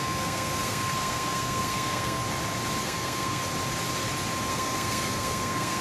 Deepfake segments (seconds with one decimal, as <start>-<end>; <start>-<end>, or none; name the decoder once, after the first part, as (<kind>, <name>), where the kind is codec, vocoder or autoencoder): 0.0-2.2 (codec, SNAC); 2.8-3.4; 4.5-5.8